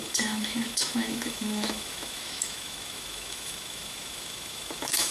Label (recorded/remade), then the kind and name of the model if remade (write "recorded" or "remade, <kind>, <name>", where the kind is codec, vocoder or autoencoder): remade, autoencoder, DAC-VAE